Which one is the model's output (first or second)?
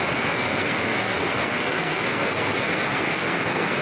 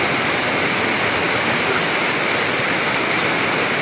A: first